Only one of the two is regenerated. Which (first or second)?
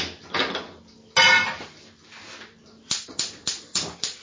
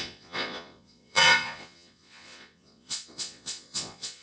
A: second